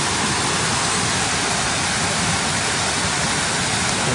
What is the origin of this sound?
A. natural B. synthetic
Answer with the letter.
A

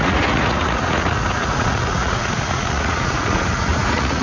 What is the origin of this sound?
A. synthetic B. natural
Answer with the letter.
A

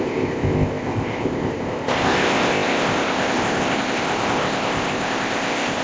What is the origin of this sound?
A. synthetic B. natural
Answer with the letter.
A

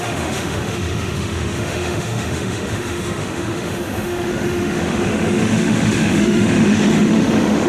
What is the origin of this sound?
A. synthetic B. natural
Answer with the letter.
A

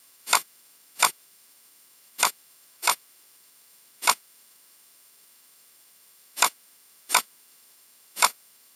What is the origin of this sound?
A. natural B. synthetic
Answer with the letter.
B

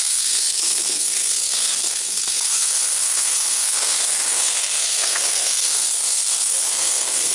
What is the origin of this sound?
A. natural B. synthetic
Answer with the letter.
B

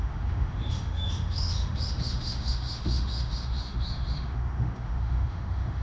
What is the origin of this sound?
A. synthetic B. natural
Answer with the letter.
A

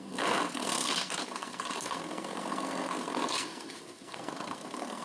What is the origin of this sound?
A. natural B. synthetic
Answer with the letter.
B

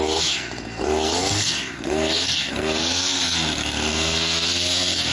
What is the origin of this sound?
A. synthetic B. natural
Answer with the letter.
A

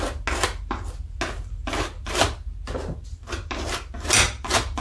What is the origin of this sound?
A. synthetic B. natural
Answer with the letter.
B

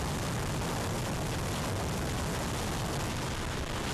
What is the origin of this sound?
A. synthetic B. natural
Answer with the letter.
B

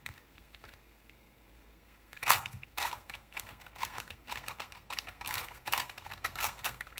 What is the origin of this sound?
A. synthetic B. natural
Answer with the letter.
A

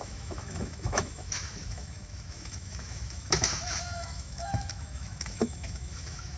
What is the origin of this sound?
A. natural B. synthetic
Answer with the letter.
B